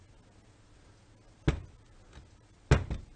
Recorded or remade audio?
recorded